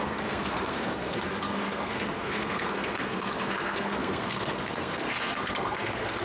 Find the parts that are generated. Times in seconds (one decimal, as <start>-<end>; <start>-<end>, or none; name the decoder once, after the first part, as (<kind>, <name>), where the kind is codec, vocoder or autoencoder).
0.0-6.2 (codec, SNAC)